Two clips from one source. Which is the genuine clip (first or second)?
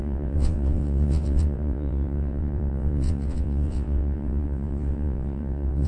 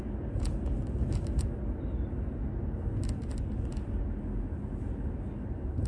second